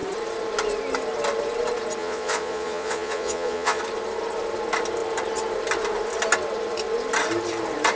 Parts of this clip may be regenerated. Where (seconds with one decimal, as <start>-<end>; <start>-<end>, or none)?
2.0-3.8